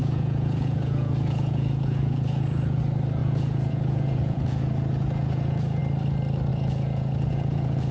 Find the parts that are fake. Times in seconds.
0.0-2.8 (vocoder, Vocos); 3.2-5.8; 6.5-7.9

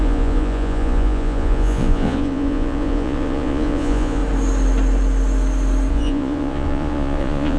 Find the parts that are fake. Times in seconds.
0.0-4.2 (vocoder, Vocos); 5.9-7.6

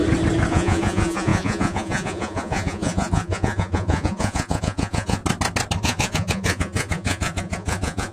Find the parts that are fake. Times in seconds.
0.5-5.2 (vocoder, Vocos); 5.8-8.1

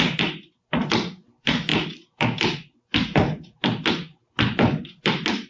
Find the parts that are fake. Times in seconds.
none

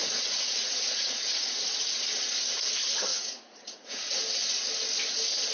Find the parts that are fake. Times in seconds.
0.0-1.7 (vocoder, Vocos); 3.1-4.2

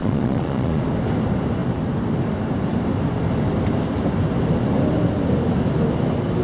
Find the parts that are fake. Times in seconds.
0.0-0.8 (vocoder, Vocos)

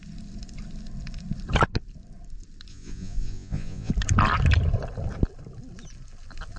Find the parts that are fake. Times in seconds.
2.7-3.9 (vocoder, Vocos)